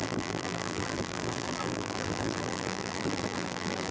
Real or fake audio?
fake